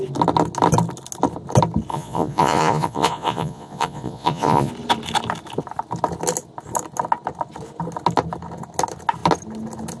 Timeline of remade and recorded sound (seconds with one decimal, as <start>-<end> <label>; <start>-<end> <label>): 0.0-1.9 recorded; 1.9-4.7 remade; 4.7-10.0 recorded

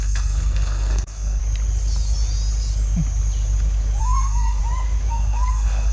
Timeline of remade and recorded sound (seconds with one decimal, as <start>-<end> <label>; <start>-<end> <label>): 0.0-1.4 remade; 1.4-4.0 recorded; 4.0-4.6 remade; 4.6-5.1 recorded; 5.1-5.9 remade

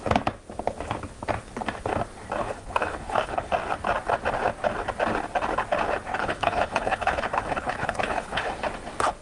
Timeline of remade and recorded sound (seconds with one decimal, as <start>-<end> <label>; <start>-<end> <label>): 0.0-2.4 recorded; 2.4-3.5 remade; 3.5-6.1 recorded; 6.1-8.5 remade; 8.5-9.2 recorded

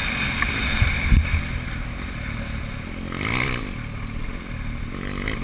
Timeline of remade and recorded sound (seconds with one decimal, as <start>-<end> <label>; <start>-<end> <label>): 0.0-5.4 recorded

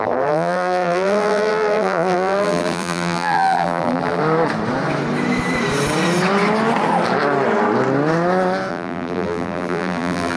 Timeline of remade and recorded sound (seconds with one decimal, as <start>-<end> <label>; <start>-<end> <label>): 0.0-4.2 remade; 4.2-8.7 recorded; 8.7-10.4 remade